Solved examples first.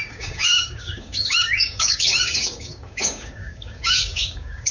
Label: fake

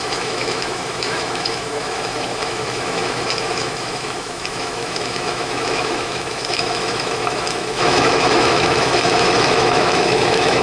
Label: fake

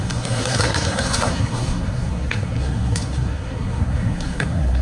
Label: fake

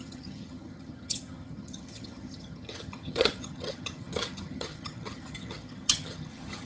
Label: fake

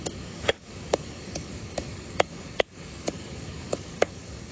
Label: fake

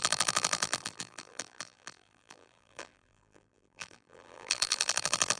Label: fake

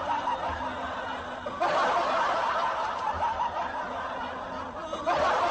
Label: real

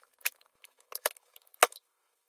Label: fake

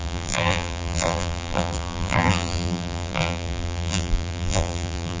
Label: fake